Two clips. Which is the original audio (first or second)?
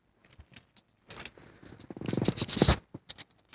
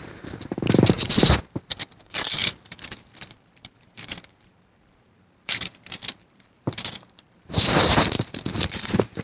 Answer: first